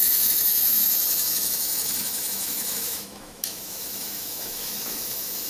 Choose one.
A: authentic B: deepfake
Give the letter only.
B